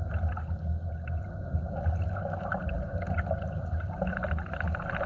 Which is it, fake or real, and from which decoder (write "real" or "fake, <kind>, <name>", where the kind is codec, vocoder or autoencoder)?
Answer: real